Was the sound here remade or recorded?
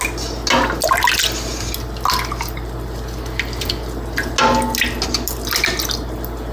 recorded